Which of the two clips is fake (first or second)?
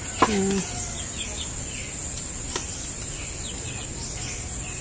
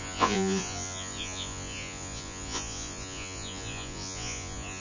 second